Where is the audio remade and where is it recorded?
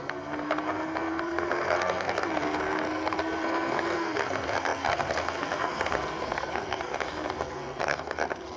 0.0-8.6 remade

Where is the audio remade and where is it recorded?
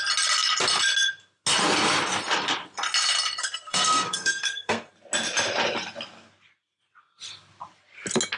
0.0-3.4 recorded; 3.4-4.9 remade; 4.9-8.4 recorded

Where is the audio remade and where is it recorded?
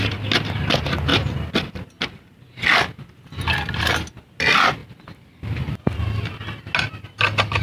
0.0-7.6 recorded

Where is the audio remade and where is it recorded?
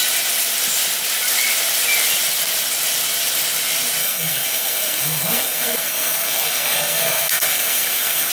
0.0-4.0 recorded; 4.0-8.3 remade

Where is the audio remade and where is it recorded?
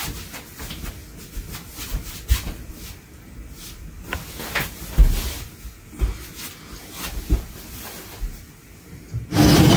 0.0-9.8 recorded